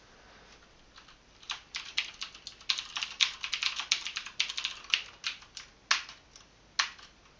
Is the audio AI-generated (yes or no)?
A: no